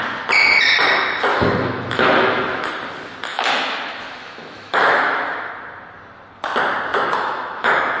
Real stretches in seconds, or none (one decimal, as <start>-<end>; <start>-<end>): 0.0-1.3; 2.7-3.3; 5.5-6.9